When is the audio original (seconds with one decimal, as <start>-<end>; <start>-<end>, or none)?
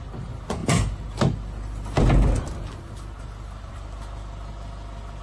0.0-5.2